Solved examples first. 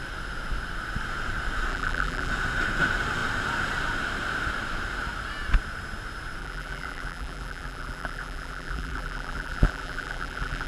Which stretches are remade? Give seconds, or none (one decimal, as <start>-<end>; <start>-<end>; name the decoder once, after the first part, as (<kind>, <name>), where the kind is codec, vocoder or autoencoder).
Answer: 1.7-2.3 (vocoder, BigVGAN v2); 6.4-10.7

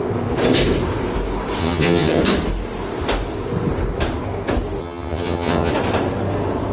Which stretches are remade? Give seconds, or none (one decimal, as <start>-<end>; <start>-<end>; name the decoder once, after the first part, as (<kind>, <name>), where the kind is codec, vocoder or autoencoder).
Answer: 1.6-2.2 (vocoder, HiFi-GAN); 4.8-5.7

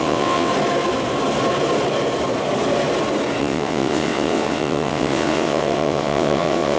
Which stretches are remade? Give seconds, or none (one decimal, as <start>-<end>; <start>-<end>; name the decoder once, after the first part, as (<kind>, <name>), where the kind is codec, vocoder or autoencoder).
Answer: 0.0-0.5 (vocoder, WaveNeXt); 3.4-6.8